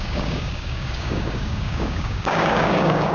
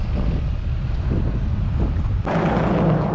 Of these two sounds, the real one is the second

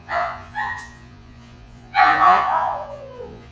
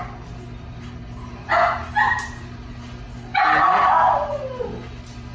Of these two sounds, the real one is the second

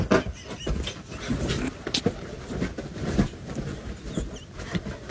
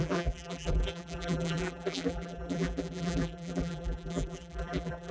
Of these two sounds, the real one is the first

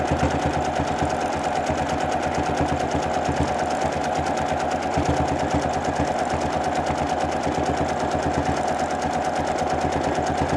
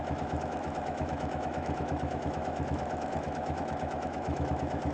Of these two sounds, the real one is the first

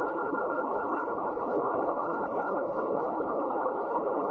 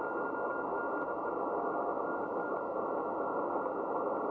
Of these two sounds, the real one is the second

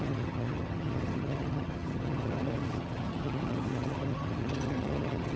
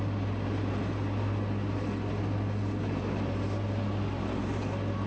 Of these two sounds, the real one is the second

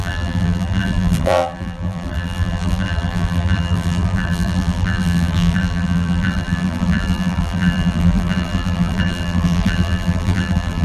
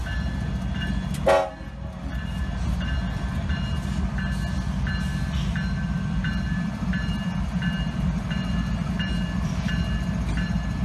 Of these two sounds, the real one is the second